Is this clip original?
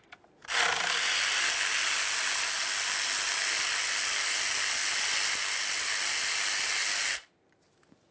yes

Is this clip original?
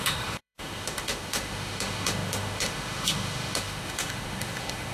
no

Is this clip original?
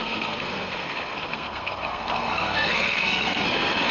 no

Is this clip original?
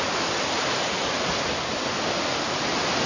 yes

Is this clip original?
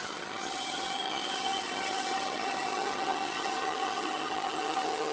no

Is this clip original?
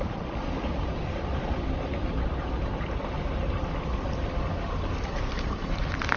yes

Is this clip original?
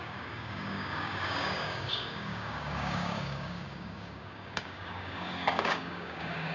no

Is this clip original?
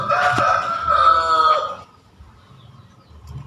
yes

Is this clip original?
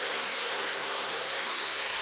no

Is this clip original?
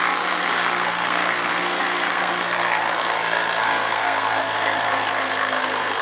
no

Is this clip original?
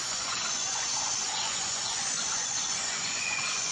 no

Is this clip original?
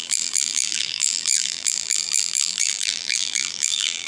no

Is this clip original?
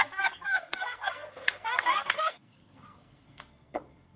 no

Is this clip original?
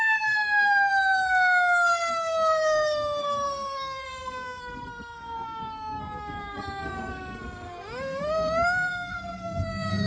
no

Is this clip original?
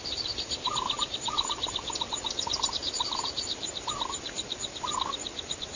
yes